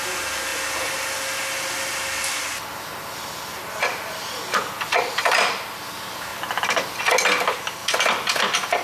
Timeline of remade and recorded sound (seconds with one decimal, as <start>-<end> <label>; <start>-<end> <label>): 0.0-4.9 recorded; 4.9-5.5 remade; 5.5-8.8 recorded